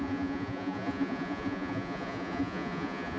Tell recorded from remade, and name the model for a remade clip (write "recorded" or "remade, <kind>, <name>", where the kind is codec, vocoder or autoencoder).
remade, vocoder, Vocos